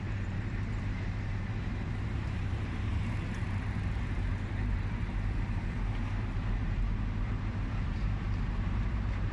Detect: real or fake fake